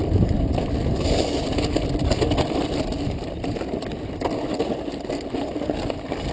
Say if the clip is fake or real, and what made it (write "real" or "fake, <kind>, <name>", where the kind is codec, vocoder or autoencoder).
real